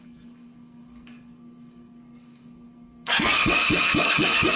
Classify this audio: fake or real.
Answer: fake